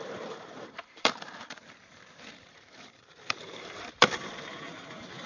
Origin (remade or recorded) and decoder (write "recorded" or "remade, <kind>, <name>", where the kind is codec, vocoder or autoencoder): remade, vocoder, BigVGAN v2